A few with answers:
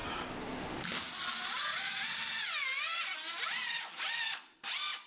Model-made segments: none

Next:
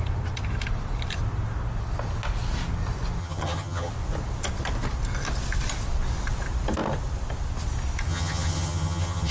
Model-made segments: 3.2-3.9 (vocoder, HiFi-GAN); 8.1-9.3